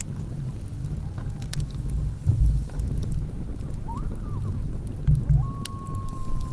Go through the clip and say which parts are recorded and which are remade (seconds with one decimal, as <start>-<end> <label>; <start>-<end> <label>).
0.0-6.5 recorded